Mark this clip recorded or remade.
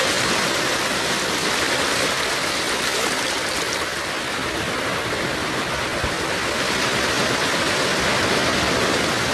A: recorded